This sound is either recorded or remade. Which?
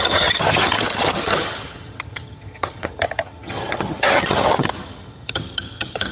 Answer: remade